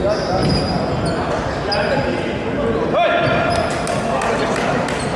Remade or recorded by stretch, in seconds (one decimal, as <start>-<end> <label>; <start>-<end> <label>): 0.0-5.2 recorded